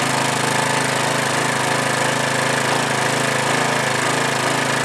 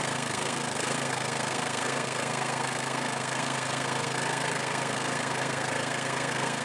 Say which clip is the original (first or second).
first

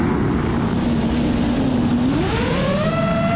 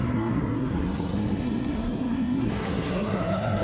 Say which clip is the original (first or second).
first